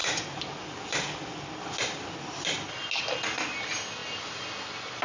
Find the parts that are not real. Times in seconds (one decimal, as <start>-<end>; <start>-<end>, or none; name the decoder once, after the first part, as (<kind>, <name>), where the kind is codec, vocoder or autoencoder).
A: none